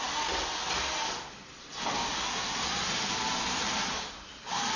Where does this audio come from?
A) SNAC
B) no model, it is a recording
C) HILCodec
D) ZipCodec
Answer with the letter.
B